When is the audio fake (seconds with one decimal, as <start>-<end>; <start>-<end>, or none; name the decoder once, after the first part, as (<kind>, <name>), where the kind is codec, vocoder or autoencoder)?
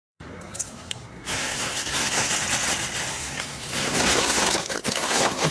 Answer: 0.0-2.3 (codec, SNAC); 3.1-5.5